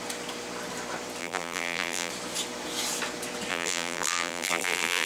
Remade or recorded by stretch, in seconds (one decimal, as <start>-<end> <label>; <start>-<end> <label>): 0.0-1.2 recorded; 1.2-2.1 remade; 2.1-3.5 recorded; 3.5-5.1 remade